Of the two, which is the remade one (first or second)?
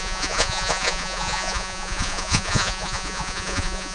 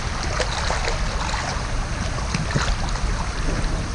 first